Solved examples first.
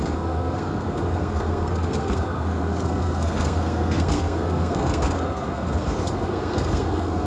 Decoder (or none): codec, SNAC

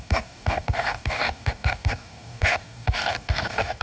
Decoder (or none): codec, DAC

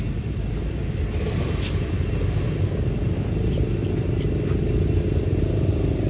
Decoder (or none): none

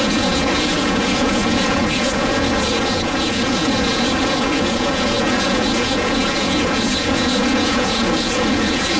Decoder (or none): vocoder, Vocos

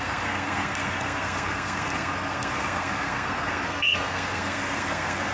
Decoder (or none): codec, SNAC